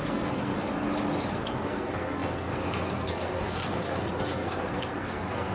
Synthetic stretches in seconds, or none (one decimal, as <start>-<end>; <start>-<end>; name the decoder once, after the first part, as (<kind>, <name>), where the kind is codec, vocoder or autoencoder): 0.0-0.5 (codec, SNAC); 1.3-5.5